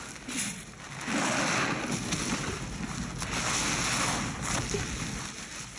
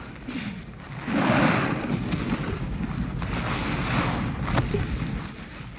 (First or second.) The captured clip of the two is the first